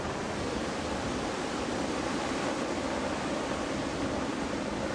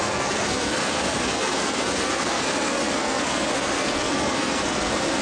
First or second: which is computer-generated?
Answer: second